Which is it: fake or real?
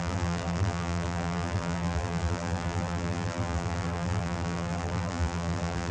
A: fake